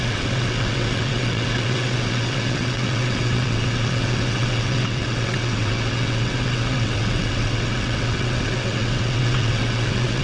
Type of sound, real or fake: fake